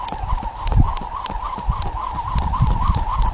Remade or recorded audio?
recorded